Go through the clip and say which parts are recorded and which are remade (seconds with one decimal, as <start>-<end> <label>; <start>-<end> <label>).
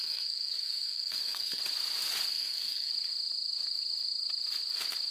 0.0-1.6 remade; 1.6-2.3 recorded; 2.3-2.9 remade; 2.9-5.1 recorded